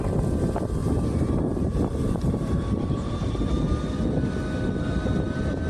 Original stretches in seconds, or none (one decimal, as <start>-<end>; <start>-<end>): 0.0-0.8; 3.5-5.7

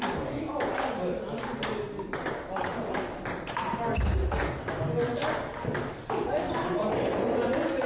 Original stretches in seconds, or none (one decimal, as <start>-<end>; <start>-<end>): 0.0-7.9

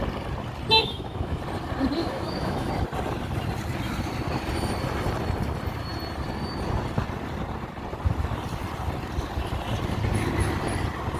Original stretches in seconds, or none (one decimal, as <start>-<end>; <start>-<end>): 0.0-0.8; 1.4-2.0; 2.7-11.2